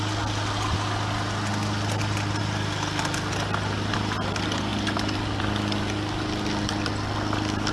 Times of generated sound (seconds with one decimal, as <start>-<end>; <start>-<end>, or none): none